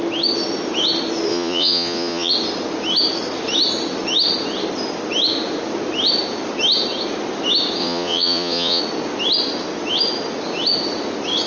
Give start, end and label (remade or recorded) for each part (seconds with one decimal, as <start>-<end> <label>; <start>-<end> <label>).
0.0-1.3 recorded; 1.3-2.3 remade; 2.3-7.8 recorded; 7.8-8.8 remade; 8.8-11.5 recorded